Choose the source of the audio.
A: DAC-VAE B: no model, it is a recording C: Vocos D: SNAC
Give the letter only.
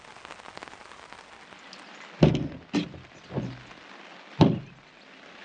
B